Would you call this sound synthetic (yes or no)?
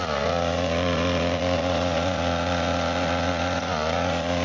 yes